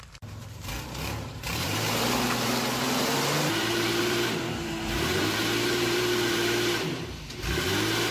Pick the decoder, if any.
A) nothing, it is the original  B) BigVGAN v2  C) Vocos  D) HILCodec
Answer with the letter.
B